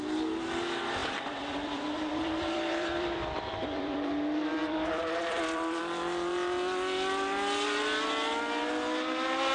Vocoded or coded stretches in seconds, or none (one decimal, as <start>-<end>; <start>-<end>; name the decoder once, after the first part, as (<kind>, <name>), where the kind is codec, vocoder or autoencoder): 1.0-5.8 (vocoder, BigVGAN v2)